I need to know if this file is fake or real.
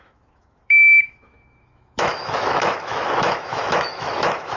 fake